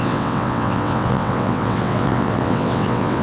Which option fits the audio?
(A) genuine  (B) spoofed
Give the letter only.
B